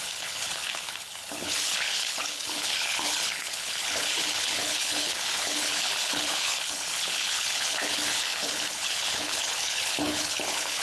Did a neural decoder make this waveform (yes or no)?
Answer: yes